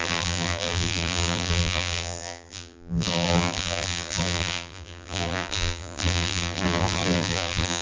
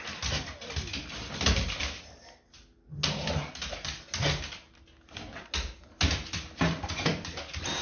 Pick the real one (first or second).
second